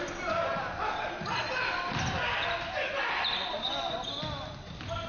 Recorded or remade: recorded